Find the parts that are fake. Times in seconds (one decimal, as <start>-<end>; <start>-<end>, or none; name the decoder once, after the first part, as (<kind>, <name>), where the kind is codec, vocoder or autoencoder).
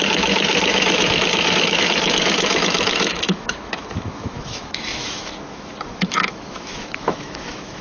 0.0-7.8 (autoencoder, DAC-VAE)